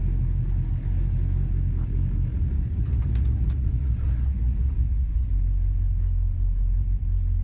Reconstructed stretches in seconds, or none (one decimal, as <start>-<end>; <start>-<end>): 2.3-5.3